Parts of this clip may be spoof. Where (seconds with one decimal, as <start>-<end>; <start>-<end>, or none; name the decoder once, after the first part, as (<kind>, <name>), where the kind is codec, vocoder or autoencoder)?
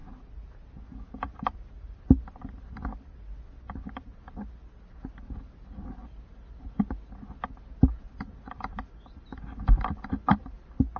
none